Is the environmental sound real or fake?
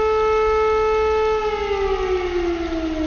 real